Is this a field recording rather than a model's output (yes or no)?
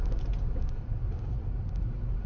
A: yes